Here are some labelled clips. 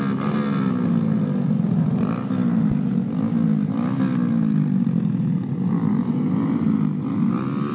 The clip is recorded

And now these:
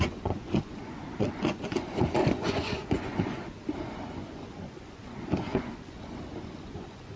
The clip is remade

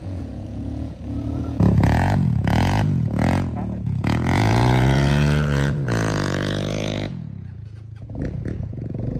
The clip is remade